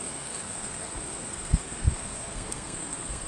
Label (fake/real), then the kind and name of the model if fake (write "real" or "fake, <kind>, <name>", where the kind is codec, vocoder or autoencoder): fake, codec, SNAC